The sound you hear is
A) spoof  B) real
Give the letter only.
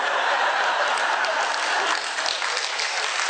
B